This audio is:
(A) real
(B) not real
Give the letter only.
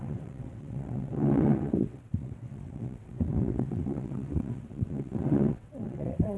B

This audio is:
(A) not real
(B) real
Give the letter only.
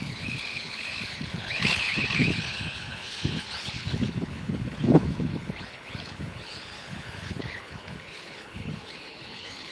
A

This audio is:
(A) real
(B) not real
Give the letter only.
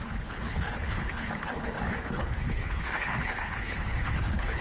B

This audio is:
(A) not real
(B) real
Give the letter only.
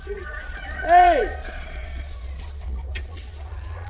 A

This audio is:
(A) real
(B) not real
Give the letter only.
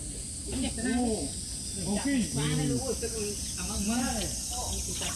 A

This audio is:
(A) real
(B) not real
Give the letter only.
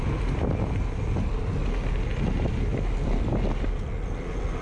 A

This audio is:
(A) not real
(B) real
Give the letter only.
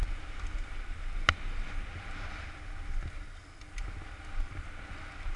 B